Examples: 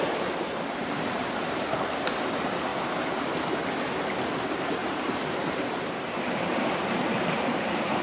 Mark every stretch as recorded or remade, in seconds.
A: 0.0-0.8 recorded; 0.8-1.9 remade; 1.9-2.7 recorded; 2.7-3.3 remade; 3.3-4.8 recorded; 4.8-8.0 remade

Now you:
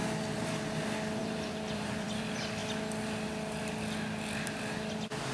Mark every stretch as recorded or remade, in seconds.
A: 0.0-1.2 recorded; 1.2-2.2 remade; 2.2-5.3 recorded

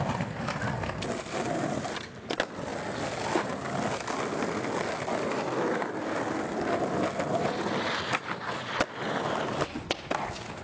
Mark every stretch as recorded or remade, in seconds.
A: 0.0-10.6 recorded